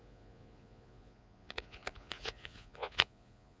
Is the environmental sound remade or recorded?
remade